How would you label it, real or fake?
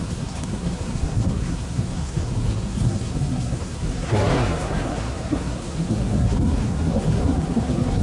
fake